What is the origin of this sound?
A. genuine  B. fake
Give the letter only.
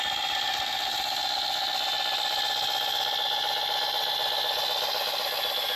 A